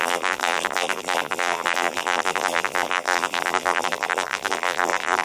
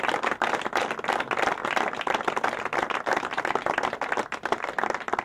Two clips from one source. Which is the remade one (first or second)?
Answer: first